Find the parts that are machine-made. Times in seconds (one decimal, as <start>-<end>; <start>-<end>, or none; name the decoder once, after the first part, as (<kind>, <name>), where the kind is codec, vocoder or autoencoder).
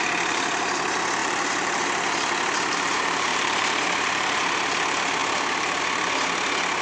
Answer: 1.2-1.8 (vocoder, BigVGAN v2); 3.3-4.4